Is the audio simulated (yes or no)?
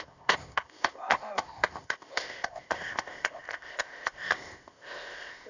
yes